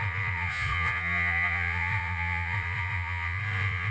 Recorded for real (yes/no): no